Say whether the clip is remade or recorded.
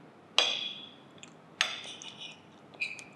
recorded